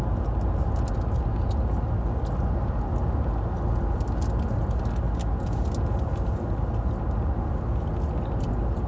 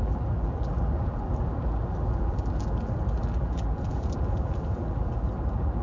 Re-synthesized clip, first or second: second